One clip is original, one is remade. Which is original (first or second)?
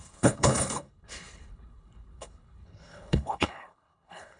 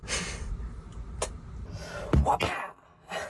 second